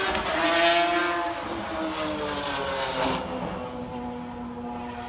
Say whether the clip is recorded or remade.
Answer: recorded